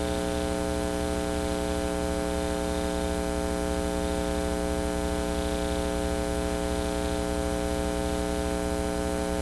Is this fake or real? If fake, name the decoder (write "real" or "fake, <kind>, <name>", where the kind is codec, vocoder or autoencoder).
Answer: real